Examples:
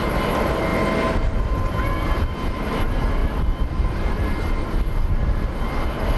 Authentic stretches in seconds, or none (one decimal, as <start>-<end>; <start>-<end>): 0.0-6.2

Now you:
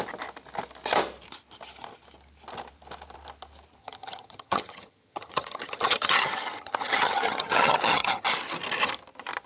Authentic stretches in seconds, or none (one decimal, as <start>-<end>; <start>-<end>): 0.0-3.8; 8.2-9.5

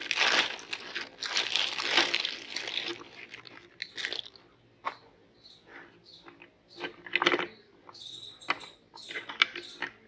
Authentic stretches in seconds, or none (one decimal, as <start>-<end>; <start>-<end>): 0.0-10.1

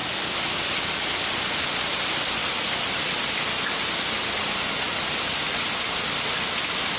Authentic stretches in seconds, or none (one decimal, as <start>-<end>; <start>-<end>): 0.0-7.0

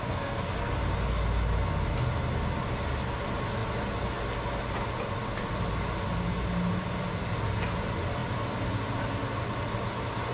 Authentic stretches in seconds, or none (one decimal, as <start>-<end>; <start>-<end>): 0.8-10.3